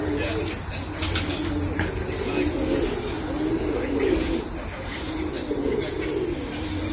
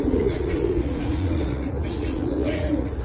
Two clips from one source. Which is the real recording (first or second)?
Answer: first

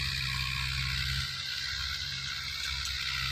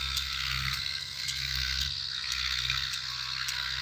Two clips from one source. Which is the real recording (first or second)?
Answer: first